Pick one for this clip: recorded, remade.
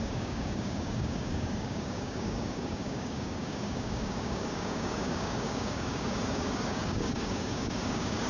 remade